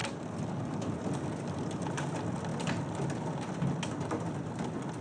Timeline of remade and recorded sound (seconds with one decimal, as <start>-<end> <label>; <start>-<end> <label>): 0.0-5.0 recorded